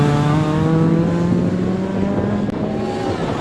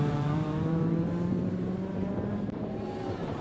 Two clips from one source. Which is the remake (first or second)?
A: second